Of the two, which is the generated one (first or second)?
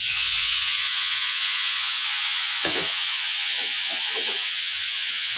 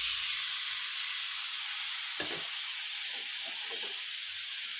first